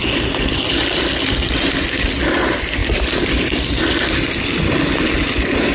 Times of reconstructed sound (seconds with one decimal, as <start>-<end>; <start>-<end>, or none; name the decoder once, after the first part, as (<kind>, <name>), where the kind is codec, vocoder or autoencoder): none